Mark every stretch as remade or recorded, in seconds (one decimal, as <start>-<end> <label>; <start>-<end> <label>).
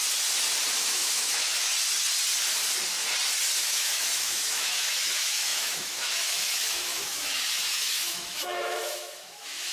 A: 0.0-0.8 recorded; 0.8-1.7 remade; 1.7-3.6 recorded; 3.6-9.7 remade